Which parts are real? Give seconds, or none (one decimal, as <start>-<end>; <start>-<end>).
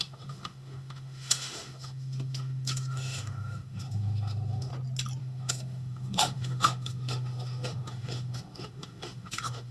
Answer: 4.7-5.2